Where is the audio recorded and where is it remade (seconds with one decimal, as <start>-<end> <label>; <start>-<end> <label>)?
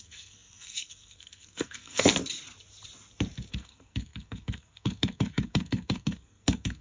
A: 0.0-2.1 remade; 2.1-3.5 recorded; 3.5-6.8 remade